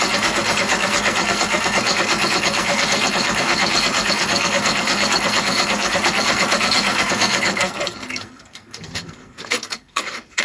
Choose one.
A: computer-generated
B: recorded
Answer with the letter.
A